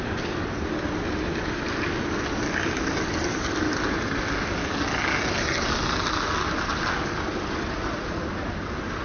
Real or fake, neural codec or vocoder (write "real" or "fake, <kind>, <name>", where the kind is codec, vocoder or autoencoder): real